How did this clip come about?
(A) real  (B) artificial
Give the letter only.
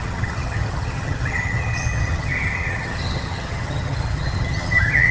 B